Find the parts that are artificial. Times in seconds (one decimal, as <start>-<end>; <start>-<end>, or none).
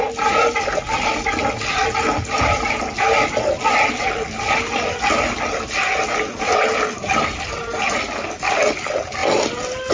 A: none